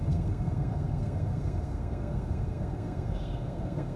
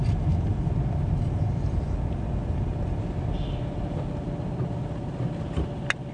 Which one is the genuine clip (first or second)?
second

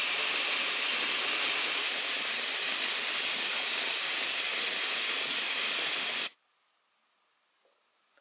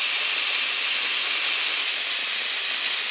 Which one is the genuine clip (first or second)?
second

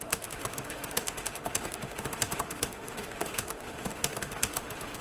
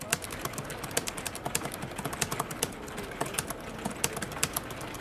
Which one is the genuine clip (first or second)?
second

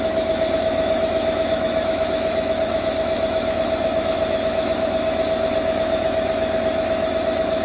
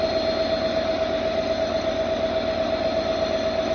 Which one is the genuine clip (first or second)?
second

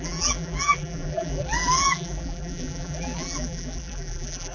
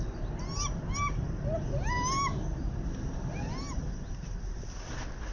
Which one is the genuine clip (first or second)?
second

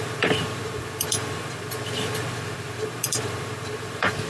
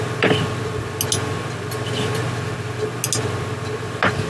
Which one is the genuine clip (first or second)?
second